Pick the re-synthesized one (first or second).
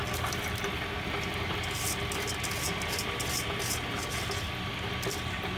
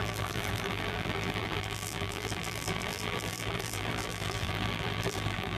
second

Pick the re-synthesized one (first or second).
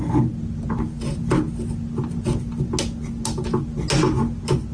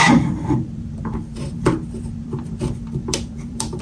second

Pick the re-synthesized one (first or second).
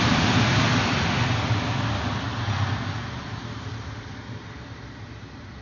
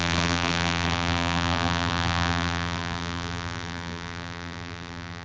second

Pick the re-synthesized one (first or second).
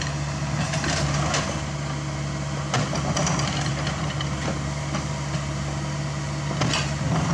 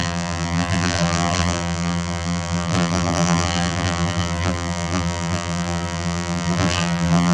second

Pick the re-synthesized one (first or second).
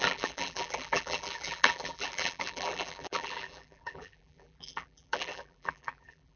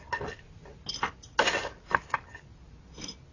first